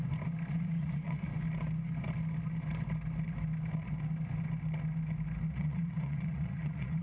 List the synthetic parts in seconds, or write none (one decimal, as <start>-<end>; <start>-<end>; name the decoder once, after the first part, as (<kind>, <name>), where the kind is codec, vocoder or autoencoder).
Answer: 0.5-1.3 (vocoder, Vocos); 5.5-7.0